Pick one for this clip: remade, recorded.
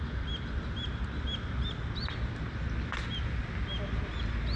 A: recorded